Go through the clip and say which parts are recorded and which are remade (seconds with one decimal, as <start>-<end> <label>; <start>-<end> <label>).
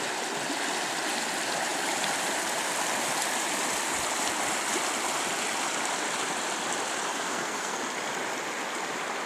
0.0-7.1 recorded; 7.1-7.8 remade; 7.8-9.3 recorded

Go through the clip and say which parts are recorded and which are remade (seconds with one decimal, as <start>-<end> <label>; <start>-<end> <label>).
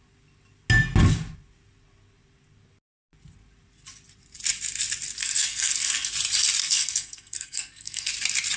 0.0-5.2 recorded; 5.2-6.1 remade; 6.1-6.6 recorded; 6.6-8.1 remade; 8.1-8.6 recorded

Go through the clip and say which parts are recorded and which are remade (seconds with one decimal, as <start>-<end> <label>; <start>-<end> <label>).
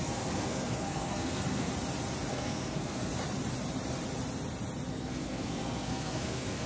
0.0-1.7 remade; 1.7-2.3 recorded; 2.3-3.1 remade; 3.1-4.9 recorded; 4.9-6.7 remade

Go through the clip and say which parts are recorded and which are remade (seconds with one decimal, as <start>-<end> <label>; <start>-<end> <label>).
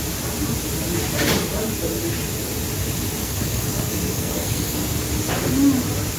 0.0-3.2 recorded; 3.2-5.1 remade; 5.1-6.2 recorded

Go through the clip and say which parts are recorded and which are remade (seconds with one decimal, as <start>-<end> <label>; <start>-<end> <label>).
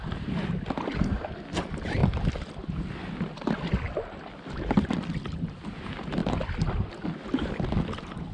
0.0-8.3 recorded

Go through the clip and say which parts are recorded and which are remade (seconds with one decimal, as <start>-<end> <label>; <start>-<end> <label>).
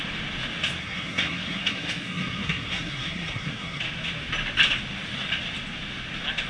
0.0-0.8 recorded; 0.8-3.8 remade; 3.8-6.5 recorded